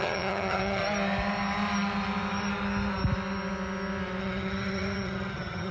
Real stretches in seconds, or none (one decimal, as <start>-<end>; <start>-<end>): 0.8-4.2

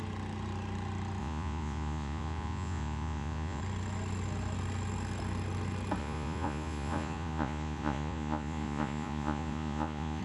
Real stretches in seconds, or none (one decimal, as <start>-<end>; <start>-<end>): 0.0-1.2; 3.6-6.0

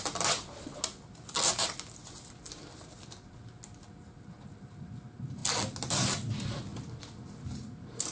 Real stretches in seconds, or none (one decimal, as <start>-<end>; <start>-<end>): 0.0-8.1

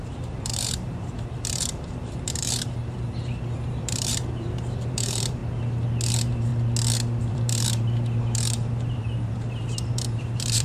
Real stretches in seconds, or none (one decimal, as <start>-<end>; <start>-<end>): 5.4-6.1; 6.5-7.2

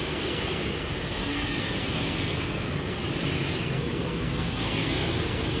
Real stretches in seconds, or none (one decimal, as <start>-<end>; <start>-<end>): 3.0-3.6

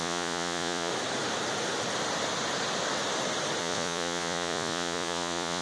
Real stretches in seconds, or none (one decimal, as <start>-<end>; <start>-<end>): 0.9-3.6